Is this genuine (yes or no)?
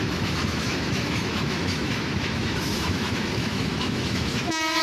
no